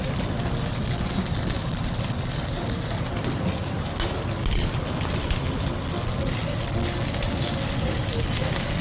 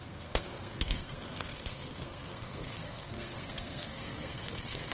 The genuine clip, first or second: first